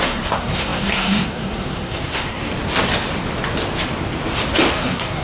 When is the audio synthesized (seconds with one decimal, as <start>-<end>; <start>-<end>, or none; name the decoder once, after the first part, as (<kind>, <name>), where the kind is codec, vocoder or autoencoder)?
0.0-2.4 (codec, SNAC); 4.7-5.2